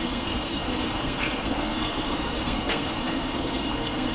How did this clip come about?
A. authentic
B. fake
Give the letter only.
B